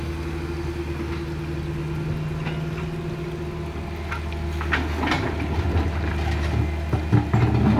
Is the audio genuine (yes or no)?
yes